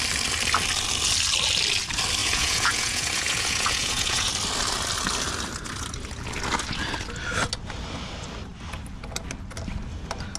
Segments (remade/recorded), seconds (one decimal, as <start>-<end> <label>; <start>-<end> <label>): 0.0-2.2 recorded; 2.2-4.3 remade; 4.3-10.4 recorded

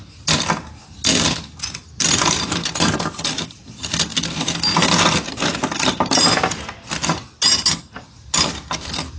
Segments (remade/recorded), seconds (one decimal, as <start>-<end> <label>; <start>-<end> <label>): 0.0-9.2 recorded

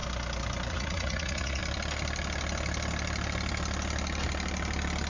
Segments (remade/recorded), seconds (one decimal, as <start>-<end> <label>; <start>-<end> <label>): 0.0-0.7 recorded; 0.7-1.6 remade; 1.6-5.1 recorded

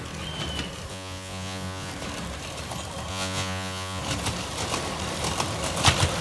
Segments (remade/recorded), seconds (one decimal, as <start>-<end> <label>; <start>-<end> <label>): 0.0-0.9 recorded; 0.9-1.9 remade; 1.9-3.1 recorded; 3.1-4.0 remade; 4.0-6.2 recorded

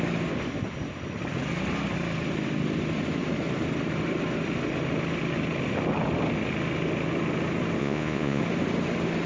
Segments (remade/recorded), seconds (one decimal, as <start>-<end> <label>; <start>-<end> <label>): 0.0-7.8 recorded; 7.8-8.4 remade; 8.4-9.3 recorded

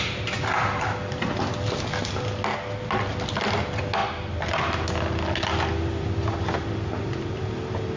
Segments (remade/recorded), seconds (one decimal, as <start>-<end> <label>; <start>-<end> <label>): 0.0-8.0 recorded